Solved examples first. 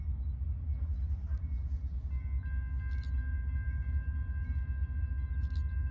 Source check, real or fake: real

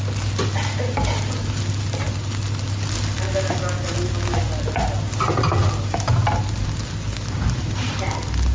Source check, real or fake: real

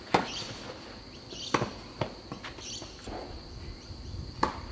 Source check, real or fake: real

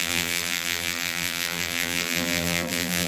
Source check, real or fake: fake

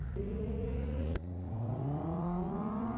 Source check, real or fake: fake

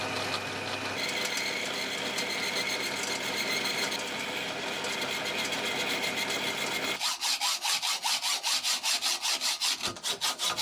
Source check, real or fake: real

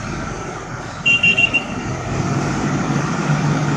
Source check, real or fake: fake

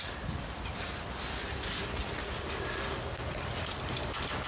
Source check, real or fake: real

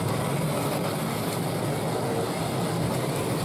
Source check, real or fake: real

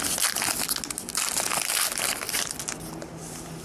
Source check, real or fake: real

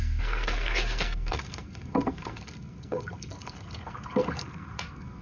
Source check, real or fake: fake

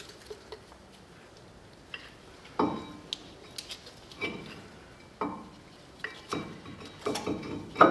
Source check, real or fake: real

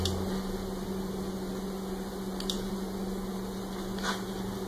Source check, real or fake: real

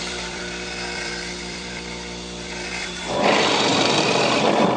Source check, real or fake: fake